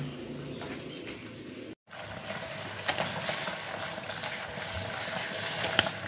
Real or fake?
real